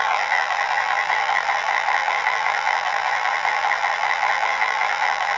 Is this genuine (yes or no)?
no